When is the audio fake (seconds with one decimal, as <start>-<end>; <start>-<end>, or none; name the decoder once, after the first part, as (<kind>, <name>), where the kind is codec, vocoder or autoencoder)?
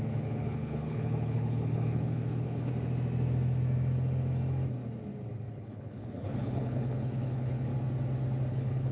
0.0-2.7 (codec, HILCodec); 5.5-7.7; 8.5-8.9